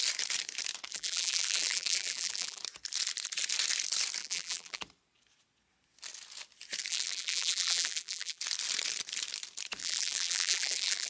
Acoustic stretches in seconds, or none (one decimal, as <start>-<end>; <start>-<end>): 0.0-0.9; 2.6-4.2; 4.8-6.9; 8.4-9.8